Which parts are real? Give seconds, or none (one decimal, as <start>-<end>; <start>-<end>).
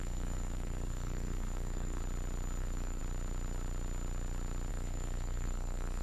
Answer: 2.0-2.6; 3.0-4.7